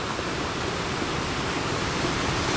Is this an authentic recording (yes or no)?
yes